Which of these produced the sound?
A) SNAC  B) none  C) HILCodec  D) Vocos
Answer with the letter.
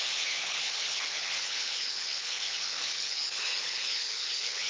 C